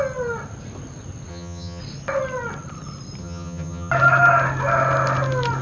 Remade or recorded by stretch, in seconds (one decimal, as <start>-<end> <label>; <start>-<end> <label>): 0.0-1.3 recorded; 1.3-1.8 remade; 1.8-3.2 recorded; 3.2-3.9 remade; 3.9-5.6 recorded